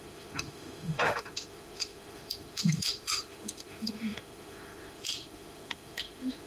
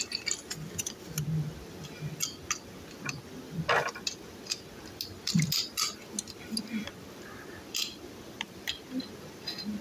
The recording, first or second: second